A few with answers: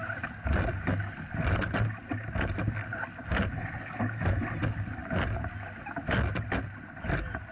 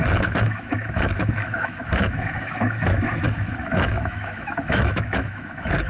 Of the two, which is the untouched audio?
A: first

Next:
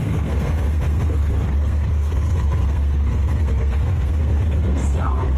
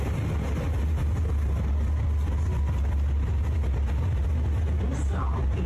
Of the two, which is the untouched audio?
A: second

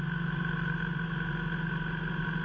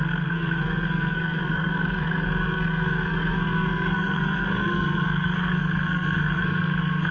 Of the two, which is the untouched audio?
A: first